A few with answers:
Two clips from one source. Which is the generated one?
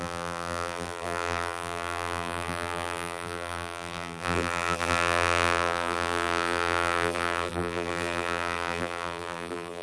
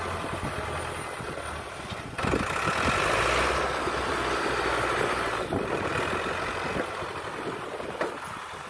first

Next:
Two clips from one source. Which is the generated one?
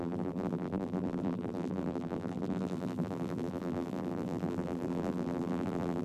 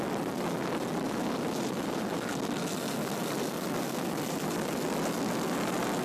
first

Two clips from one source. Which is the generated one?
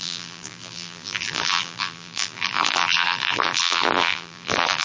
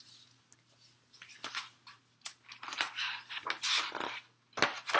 first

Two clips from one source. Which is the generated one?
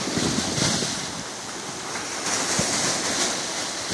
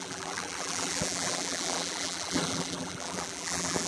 second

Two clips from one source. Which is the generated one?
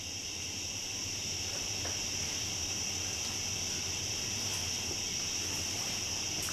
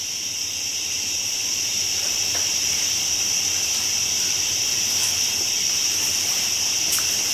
second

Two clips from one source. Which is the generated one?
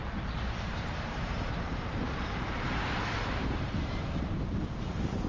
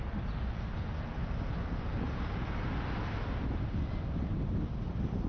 first